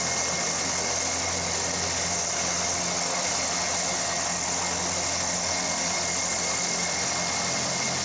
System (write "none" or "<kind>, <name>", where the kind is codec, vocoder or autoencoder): none